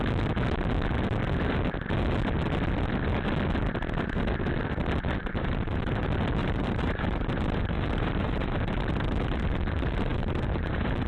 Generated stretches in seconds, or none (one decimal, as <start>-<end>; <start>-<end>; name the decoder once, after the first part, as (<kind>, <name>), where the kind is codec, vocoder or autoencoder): 5.2-6.0 (vocoder, BigVGAN v2); 6.4-11.1